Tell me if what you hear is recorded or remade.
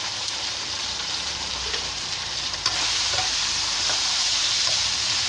remade